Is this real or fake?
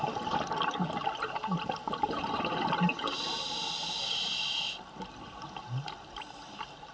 real